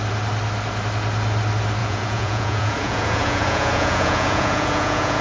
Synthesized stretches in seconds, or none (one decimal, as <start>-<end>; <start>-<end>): 1.8-5.2

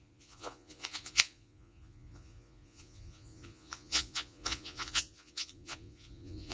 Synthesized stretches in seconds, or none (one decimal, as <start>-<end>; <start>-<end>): 0.0-6.5